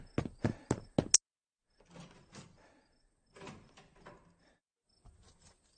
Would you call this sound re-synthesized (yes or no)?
no